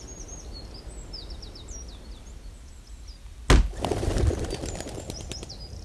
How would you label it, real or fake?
real